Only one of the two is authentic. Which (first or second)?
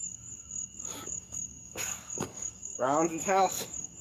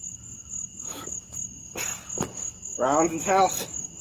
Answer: second